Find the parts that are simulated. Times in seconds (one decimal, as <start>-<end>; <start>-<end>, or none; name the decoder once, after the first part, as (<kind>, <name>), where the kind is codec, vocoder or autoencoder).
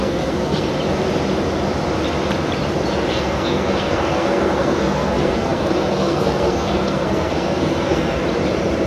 0.0-0.7 (codec, SNAC); 3.1-8.2